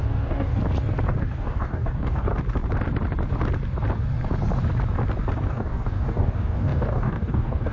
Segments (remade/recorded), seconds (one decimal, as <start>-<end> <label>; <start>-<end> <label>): 0.0-0.6 remade; 0.6-1.2 recorded; 1.2-2.3 remade; 2.3-5.5 recorded; 5.5-7.7 remade